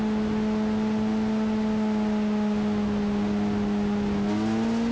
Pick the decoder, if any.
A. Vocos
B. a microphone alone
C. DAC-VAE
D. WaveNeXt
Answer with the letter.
B